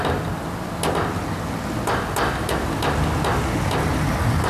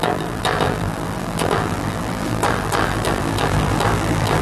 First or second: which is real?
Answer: first